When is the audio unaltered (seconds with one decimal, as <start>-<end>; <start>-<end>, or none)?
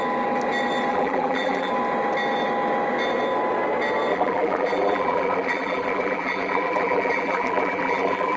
0.0-0.9; 1.7-4.1